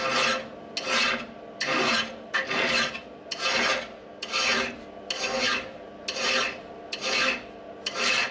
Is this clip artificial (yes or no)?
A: no